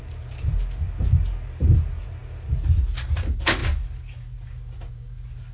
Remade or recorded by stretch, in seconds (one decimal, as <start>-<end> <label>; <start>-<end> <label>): 0.0-5.5 recorded